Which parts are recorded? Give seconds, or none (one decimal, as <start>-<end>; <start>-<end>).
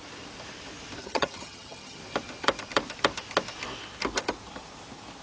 0.0-1.0; 2.0-5.2